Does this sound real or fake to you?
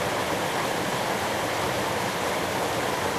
real